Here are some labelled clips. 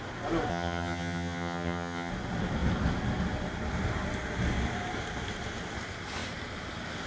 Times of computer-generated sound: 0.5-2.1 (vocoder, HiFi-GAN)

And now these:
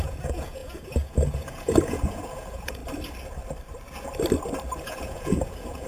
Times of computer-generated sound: 0.0-2.8 (vocoder, Vocos); 4.8-5.9